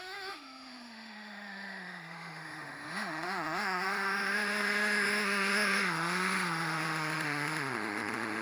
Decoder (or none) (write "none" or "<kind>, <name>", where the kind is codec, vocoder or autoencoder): autoencoder, DAC-VAE